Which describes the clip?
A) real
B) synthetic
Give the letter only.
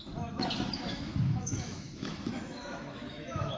B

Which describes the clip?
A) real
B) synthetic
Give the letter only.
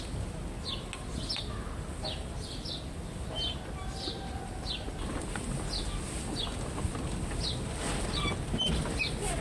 A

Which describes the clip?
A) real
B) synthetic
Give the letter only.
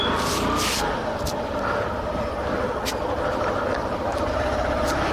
A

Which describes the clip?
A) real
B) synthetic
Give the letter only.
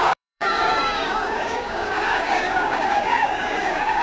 B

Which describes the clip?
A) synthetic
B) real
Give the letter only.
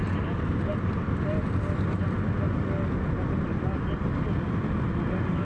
B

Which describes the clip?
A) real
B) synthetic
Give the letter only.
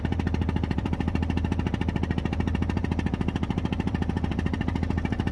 B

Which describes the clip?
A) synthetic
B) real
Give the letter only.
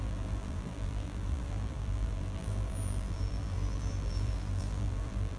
A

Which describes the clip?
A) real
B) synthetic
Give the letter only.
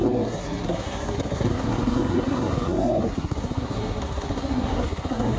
B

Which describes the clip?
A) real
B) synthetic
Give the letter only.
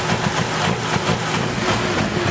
A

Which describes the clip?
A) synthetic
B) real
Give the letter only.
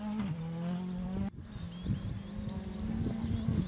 B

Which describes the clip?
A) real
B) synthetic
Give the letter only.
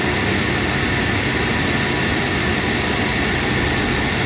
A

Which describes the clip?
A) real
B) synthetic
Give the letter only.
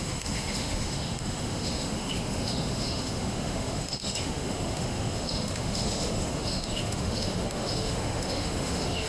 B